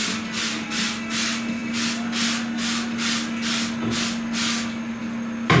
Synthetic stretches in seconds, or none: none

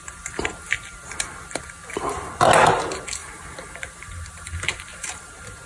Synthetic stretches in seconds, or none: 3.2-5.3 (vocoder, BigVGAN v2)

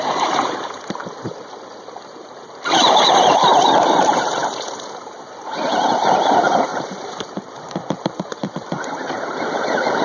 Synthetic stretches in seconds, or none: 0.0-10.0 (vocoder, BigVGAN v2)

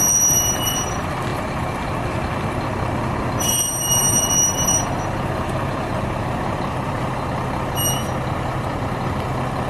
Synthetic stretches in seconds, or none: none

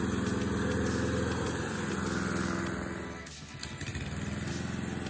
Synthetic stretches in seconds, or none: none

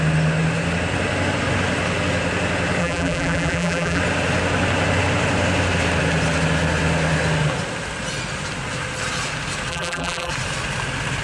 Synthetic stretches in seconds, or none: 2.8-4.0 (vocoder, BigVGAN v2); 9.7-10.3

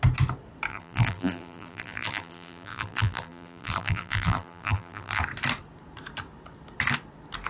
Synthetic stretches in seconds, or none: 0.7-5.2 (vocoder, BigVGAN v2)